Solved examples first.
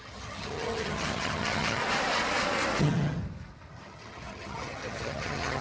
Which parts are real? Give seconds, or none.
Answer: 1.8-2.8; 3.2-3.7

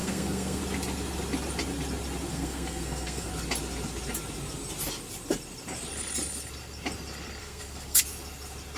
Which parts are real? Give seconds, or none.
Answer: 0.6-2.3; 3.3-7.4; 8.0-8.8